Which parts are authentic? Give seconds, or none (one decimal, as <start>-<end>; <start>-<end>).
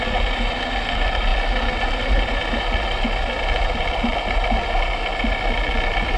0.0-6.2